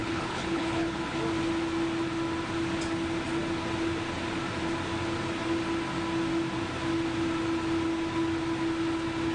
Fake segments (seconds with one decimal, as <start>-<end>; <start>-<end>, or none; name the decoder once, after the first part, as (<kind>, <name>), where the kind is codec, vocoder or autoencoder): 0.0-1.0 (codec, HILCodec)